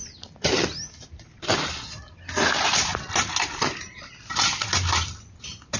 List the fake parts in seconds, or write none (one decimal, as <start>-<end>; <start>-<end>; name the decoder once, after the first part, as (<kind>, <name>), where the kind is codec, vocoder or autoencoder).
none

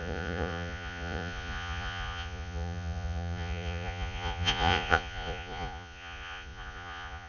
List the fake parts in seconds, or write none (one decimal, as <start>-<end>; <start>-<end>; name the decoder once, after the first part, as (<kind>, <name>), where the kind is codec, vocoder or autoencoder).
0.0-7.3 (vocoder, Vocos)

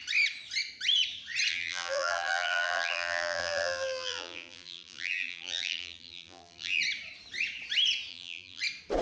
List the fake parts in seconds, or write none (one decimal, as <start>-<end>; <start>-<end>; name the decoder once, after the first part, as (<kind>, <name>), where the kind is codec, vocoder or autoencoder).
1.5-6.8 (vocoder, BigVGAN v2); 8.1-8.6

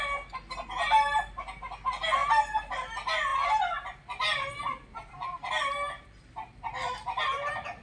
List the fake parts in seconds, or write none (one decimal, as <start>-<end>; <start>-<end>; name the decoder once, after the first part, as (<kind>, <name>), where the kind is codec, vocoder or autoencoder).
2.2-2.7 (vocoder, BigVGAN v2)

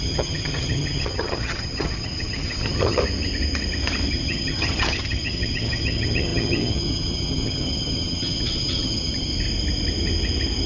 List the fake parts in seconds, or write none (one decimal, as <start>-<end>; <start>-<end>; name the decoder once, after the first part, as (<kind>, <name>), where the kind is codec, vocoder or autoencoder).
0.0-3.0 (vocoder, HiFi-GAN); 4.1-9.3

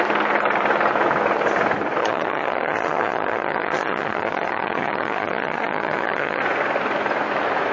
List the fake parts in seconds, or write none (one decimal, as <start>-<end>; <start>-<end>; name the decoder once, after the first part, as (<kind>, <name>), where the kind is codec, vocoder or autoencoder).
2.0-6.4 (vocoder, HiFi-GAN)

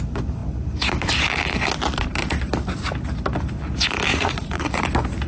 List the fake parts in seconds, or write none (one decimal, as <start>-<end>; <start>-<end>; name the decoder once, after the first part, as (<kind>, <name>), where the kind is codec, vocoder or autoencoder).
4.1-4.8 (vocoder, Vocos)

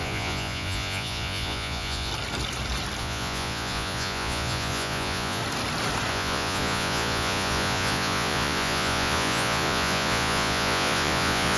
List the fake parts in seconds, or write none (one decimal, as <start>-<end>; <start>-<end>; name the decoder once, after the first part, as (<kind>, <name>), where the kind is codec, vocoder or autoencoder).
0.0-2.1 (vocoder, Vocos); 3.0-5.4; 6.1-11.6